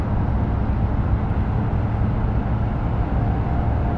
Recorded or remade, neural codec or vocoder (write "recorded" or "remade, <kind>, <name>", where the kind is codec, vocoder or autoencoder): recorded